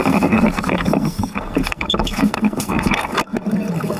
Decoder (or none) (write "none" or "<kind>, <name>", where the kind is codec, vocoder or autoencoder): codec, SNAC